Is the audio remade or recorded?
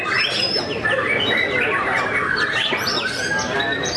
recorded